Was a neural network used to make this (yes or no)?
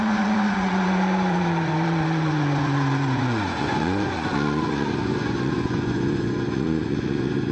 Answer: yes